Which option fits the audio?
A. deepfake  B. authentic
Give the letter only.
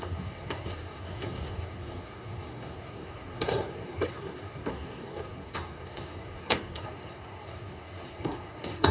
A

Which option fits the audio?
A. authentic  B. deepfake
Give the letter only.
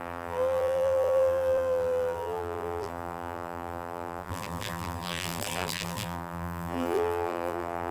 B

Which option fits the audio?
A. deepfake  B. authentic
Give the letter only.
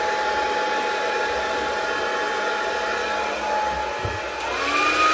B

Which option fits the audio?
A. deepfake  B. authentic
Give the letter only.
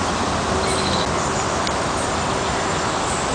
B